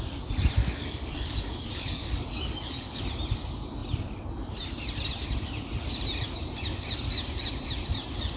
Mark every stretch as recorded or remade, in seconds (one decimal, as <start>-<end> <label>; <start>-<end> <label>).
0.0-0.6 recorded; 0.6-3.0 remade; 3.0-8.4 recorded

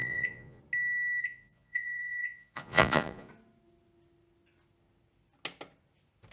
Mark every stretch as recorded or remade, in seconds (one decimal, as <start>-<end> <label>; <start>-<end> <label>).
0.0-0.6 remade; 0.6-1.2 recorded; 1.2-3.3 remade; 3.3-6.3 recorded

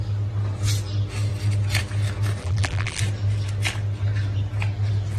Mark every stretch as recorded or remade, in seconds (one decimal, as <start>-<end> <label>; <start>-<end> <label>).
0.0-2.4 recorded; 2.4-3.0 remade; 3.0-5.2 recorded

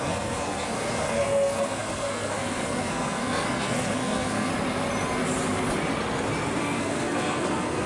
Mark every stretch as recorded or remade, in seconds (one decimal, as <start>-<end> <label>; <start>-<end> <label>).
0.0-4.5 remade; 4.5-6.6 recorded; 6.6-7.9 remade

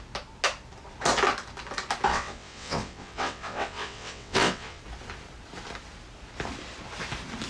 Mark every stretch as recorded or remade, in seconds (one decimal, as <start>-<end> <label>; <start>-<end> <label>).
0.0-2.1 recorded; 2.1-4.8 remade; 4.8-7.5 recorded